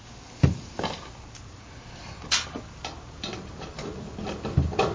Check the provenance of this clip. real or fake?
real